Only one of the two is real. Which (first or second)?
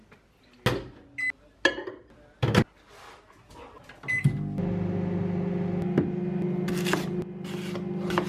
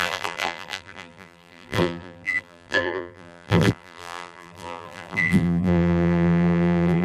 first